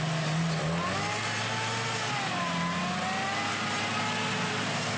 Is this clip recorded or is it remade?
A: recorded